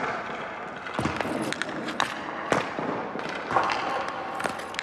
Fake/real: real